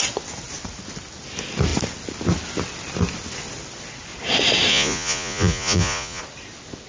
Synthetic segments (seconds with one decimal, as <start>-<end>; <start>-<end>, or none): 4.7-6.2